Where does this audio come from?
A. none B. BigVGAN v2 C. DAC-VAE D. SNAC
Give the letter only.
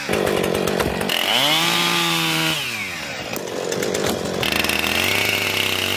A